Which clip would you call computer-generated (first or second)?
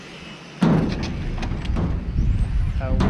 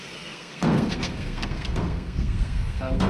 second